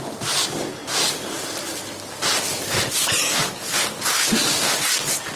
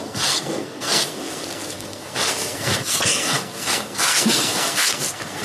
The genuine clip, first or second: first